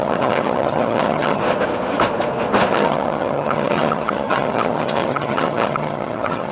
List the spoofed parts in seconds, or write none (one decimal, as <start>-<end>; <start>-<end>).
0.0-1.4; 2.7-6.5